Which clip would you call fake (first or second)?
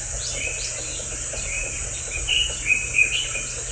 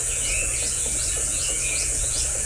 second